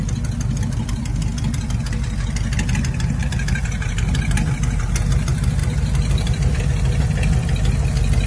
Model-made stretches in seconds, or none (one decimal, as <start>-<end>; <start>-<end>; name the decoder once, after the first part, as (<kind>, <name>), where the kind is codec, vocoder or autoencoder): 3.2-4.8 (vocoder, BigVGAN v2); 5.6-6.5